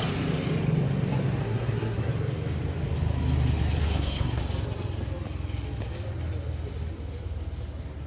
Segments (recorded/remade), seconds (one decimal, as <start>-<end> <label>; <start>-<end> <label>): 0.0-1.4 recorded; 1.4-2.1 remade; 2.1-3.8 recorded; 3.8-4.4 remade; 4.4-8.1 recorded